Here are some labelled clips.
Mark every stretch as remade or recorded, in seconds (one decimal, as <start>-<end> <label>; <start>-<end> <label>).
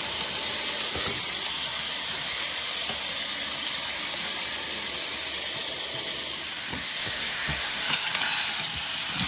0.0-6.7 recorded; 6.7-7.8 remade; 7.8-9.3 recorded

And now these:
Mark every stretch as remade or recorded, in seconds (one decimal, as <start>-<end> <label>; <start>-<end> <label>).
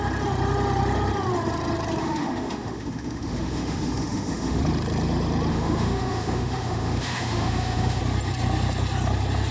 0.0-2.0 recorded; 2.0-4.6 remade; 4.6-5.5 recorded; 5.5-8.0 remade; 8.0-9.5 recorded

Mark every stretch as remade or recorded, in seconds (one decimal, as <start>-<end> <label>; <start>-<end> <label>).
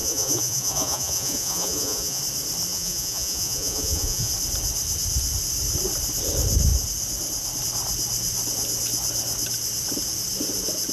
0.0-2.2 remade; 2.2-2.7 recorded; 2.7-4.3 remade; 4.3-10.9 recorded